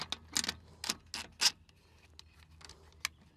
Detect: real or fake real